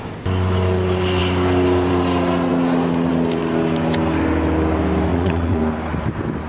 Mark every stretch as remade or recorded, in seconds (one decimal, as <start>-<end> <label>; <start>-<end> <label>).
0.0-5.1 recorded; 5.1-5.6 remade; 5.6-6.5 recorded